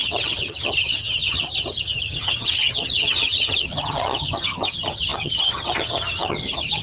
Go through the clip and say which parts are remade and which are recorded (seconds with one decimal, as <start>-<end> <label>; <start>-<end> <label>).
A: 0.0-6.8 remade